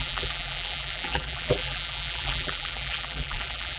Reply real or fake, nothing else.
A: fake